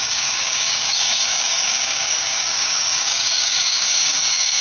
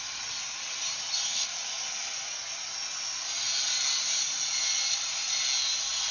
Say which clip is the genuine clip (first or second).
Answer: second